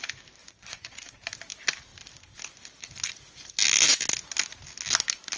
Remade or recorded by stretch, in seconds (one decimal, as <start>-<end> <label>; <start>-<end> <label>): 0.0-0.4 recorded; 0.4-1.0 remade; 1.0-5.4 recorded